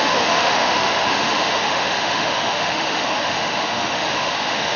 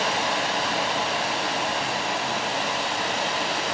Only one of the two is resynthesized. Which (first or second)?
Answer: first